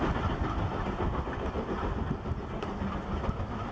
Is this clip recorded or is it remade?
recorded